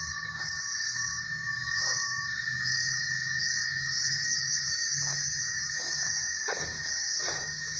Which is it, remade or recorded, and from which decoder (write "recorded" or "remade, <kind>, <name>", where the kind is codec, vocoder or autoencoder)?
remade, codec, DAC